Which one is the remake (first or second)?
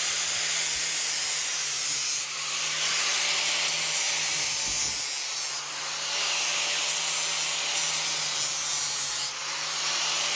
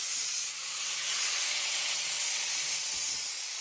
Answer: second